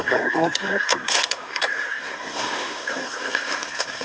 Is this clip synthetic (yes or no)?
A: yes